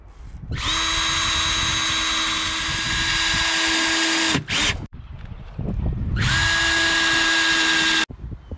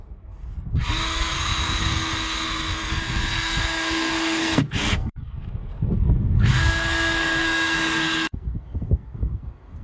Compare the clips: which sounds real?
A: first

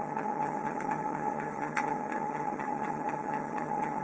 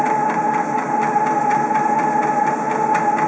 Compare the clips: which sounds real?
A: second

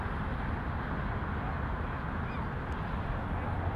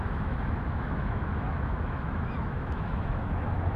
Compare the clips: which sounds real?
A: first